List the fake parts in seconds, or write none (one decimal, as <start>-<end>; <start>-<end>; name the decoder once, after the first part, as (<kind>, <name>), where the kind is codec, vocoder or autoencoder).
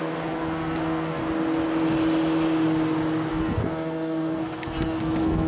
0.0-1.2 (codec, SNAC); 3.3-5.5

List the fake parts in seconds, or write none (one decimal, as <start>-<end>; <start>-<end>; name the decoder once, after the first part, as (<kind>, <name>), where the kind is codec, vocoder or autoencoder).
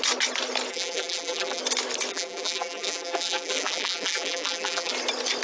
0.7-1.6 (vocoder, BigVGAN v2); 2.1-4.9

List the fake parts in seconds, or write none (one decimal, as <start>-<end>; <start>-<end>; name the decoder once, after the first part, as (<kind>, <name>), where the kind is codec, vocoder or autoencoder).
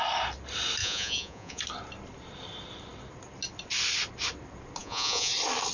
0.8-1.6 (vocoder, Vocos); 4.8-5.3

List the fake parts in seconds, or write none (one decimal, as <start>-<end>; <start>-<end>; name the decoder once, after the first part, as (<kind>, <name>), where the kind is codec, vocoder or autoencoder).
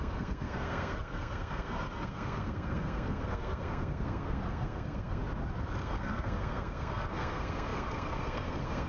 0.0-5.2 (codec, SNAC); 5.8-8.9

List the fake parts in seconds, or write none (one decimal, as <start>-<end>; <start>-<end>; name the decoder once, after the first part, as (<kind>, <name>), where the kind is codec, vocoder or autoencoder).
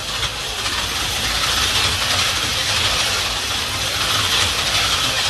none